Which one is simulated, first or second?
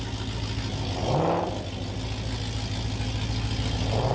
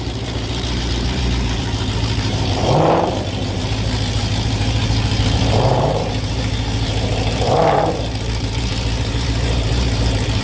second